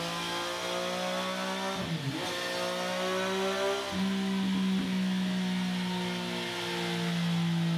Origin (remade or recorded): recorded